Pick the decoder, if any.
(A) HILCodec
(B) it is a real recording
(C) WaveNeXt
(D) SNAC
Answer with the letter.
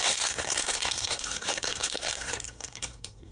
D